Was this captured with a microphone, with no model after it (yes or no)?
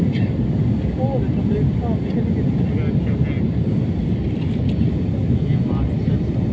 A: yes